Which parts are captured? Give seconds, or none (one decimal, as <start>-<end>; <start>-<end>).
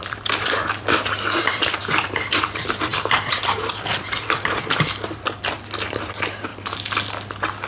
6.5-7.7